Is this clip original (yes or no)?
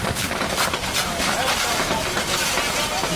yes